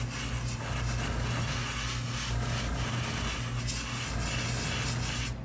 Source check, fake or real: real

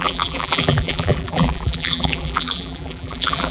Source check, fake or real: fake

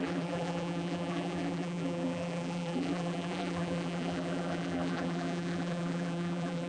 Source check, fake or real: fake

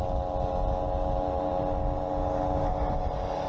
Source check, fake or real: real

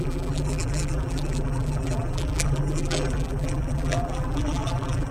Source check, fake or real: fake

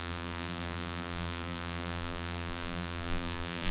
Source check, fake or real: fake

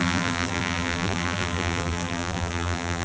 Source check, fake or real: fake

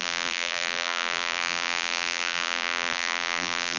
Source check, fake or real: fake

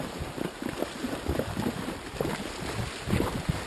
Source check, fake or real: real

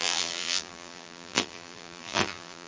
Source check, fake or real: fake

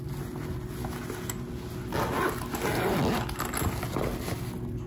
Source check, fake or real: real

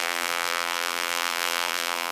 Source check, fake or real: fake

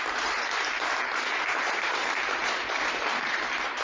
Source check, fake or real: fake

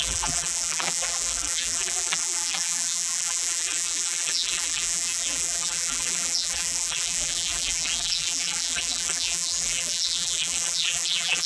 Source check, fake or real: fake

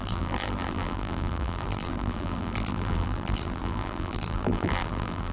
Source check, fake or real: fake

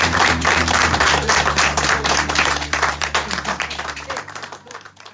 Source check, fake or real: fake